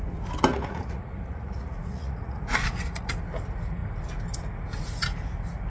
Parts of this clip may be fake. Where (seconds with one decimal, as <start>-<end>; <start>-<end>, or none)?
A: 0.5-3.1